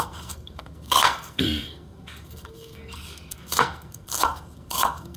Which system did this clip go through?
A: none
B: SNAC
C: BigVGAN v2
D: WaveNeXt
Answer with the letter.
B